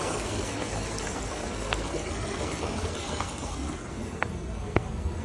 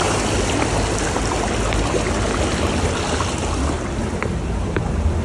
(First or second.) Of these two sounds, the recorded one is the second